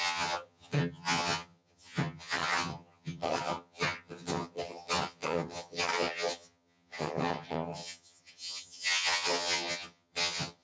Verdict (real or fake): fake